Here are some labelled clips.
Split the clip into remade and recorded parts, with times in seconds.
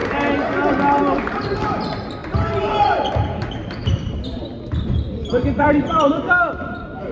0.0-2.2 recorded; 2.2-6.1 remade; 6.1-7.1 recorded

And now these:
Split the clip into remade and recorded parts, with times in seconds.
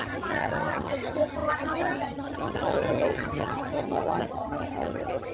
0.0-5.3 remade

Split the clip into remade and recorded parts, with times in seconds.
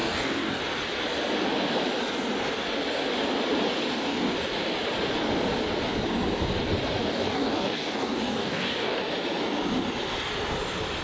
0.0-0.6 remade; 0.6-7.0 recorded; 7.0-9.0 remade; 9.0-11.0 recorded